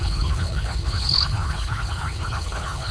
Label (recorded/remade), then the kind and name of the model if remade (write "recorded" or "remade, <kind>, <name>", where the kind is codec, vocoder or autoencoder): remade, codec, HILCodec